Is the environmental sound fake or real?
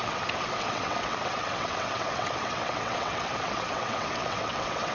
fake